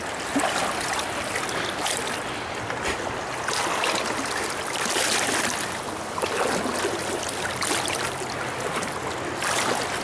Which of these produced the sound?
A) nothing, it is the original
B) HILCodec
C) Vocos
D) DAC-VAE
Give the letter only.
A